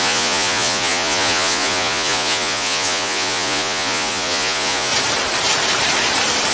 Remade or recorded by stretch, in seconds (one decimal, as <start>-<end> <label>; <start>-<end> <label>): 0.0-4.9 remade; 4.9-6.5 recorded